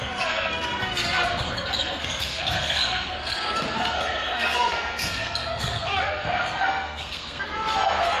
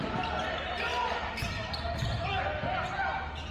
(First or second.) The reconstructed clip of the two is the first